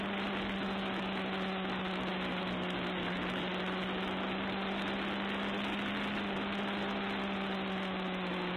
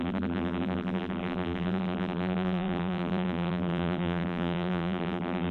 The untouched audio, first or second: first